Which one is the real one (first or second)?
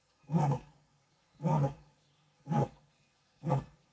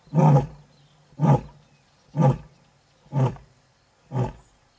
second